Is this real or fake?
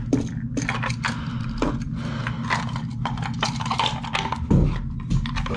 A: real